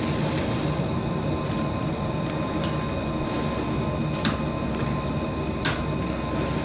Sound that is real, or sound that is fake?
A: real